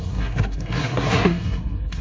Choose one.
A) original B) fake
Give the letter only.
B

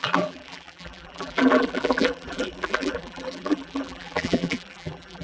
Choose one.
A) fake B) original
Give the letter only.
A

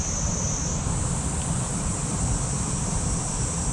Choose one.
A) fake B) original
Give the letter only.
B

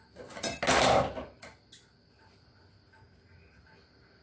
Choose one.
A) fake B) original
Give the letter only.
B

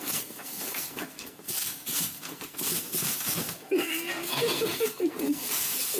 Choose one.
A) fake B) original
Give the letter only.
A